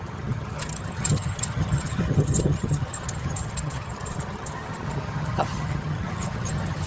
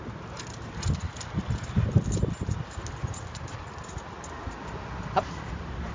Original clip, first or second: second